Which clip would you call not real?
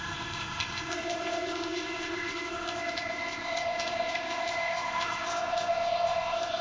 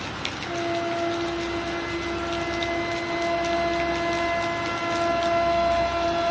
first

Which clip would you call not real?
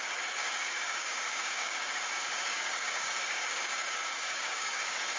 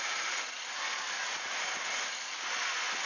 first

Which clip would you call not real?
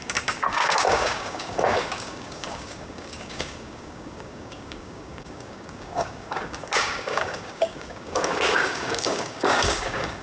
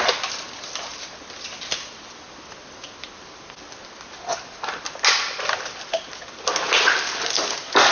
first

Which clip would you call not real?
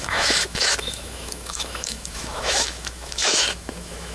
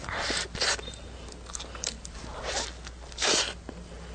first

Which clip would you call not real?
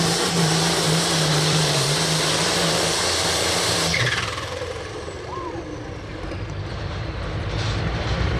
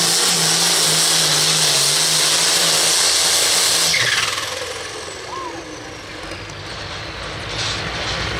first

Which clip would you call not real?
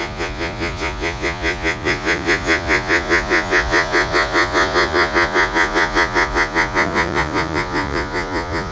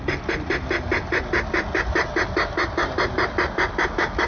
first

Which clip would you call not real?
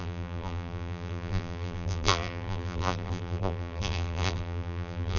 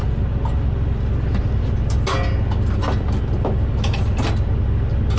first